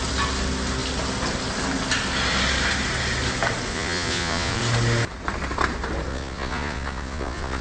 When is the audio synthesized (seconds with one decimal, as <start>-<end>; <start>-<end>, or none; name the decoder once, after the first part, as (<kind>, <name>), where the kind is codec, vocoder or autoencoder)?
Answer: 3.7-4.6 (vocoder, Vocos); 6.1-7.6